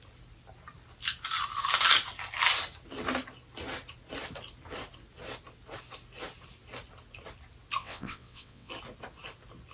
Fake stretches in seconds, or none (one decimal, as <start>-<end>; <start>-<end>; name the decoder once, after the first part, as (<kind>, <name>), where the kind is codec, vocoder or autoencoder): 7.8-8.7 (vocoder, WaveNeXt)